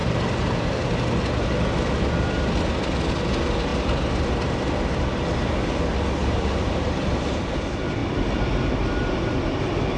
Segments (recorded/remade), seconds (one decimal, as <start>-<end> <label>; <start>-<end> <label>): 0.0-6.2 recorded; 6.2-7.6 remade; 7.6-8.0 recorded; 8.0-9.6 remade; 9.6-10.0 recorded

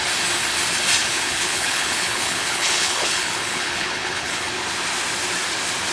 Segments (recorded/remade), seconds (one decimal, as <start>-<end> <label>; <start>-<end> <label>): 0.0-1.0 recorded; 1.0-4.5 remade; 4.5-5.9 recorded

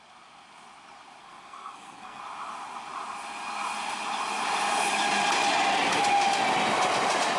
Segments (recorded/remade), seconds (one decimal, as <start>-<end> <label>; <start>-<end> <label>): 0.0-1.2 recorded; 1.2-2.2 remade; 2.2-7.4 recorded

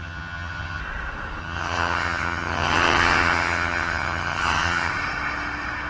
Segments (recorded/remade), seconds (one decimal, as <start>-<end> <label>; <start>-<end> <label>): 0.0-0.8 remade; 0.8-1.4 recorded; 1.4-4.9 remade; 4.9-5.9 recorded

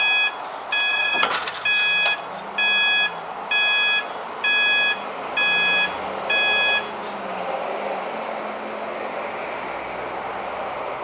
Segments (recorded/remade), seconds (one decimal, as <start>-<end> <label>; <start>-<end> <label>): 0.0-0.9 recorded; 0.9-1.5 remade; 1.5-11.0 recorded